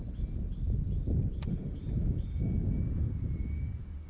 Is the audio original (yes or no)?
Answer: yes